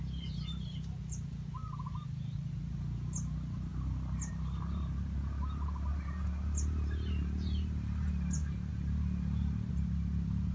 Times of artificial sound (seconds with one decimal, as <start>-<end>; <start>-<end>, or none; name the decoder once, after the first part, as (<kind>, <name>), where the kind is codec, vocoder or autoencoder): none